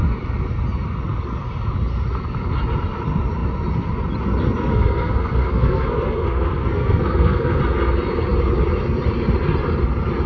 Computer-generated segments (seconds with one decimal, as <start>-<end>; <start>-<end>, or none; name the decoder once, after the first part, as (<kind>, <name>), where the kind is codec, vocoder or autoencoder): 4.6-7.6 (codec, SNAC)